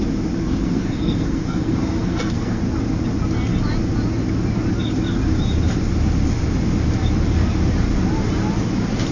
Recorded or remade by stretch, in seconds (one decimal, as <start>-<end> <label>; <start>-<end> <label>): 0.0-0.4 recorded; 0.4-2.6 remade; 2.6-9.1 recorded